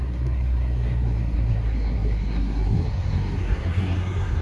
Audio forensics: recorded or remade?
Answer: remade